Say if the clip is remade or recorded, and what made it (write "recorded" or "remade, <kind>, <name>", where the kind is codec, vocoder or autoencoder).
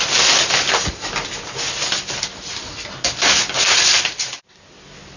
recorded